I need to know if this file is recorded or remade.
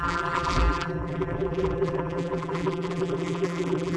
remade